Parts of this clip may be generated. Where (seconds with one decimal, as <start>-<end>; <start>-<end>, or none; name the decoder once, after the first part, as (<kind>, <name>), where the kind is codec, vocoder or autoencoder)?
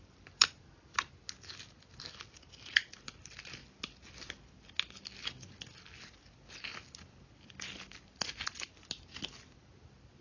none